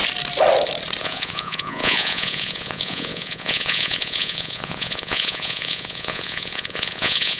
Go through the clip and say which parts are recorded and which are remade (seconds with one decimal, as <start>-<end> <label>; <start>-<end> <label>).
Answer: 0.0-1.0 recorded; 1.0-7.4 remade